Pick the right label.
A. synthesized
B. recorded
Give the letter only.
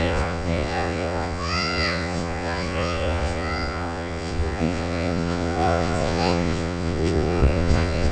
A